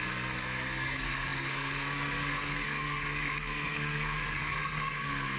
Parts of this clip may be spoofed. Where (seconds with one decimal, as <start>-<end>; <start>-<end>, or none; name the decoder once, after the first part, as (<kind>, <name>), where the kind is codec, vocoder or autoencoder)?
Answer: 0.0-5.4 (codec, SNAC)